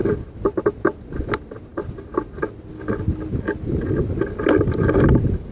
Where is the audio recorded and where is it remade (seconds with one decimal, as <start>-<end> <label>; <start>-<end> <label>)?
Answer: 0.0-5.5 recorded